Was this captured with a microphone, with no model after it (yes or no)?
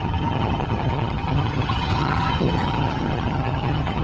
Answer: no